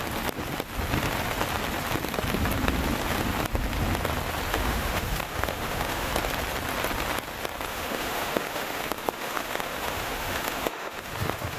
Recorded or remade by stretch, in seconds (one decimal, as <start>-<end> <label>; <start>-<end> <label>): 0.0-4.5 recorded; 4.5-6.1 remade; 6.1-7.7 recorded; 7.7-11.6 remade